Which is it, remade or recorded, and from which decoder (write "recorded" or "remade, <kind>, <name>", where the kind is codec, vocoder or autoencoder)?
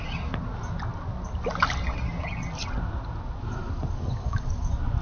recorded